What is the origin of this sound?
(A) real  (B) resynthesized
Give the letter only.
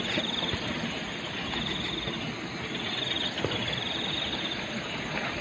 A